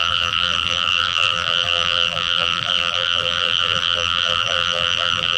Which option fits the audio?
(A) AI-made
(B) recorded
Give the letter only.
A